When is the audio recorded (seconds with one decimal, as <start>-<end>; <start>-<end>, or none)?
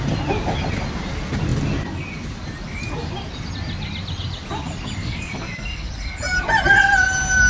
0.0-5.0; 5.9-7.5